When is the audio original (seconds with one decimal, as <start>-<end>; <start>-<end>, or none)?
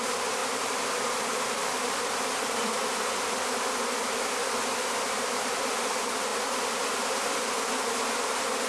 0.0-0.4; 4.0-6.3; 7.5-8.7